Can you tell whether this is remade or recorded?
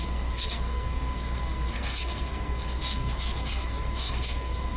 remade